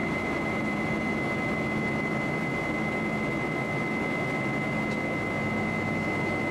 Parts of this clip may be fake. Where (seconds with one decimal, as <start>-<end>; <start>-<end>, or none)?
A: 0.0-1.0